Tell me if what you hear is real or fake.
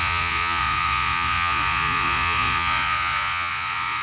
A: fake